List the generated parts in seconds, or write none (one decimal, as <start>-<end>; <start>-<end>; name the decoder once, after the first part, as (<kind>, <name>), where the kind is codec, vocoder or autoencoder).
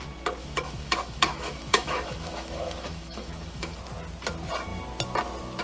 0.4-3.8 (autoencoder, DAC-VAE)